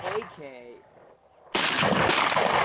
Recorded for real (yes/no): yes